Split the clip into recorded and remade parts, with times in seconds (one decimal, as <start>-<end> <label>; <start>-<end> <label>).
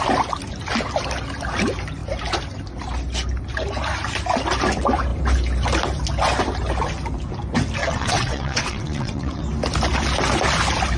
0.0-7.8 recorded; 7.8-9.4 remade; 9.4-11.0 recorded